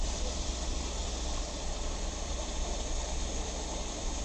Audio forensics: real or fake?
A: fake